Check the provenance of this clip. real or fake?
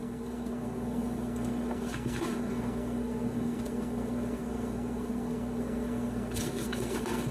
fake